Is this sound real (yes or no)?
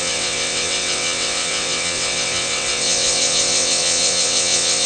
no